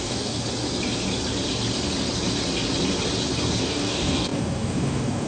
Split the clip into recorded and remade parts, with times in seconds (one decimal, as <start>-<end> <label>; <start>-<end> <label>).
0.0-0.4 remade; 0.4-3.6 recorded; 3.6-5.3 remade